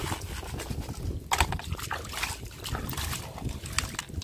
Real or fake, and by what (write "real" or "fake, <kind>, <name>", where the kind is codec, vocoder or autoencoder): real